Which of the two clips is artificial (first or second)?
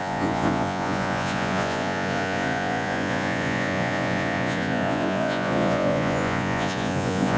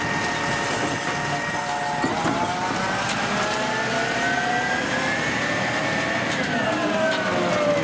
first